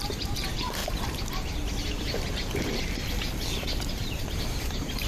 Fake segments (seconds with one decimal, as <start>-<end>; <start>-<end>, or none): 0.0-0.8; 3.9-5.1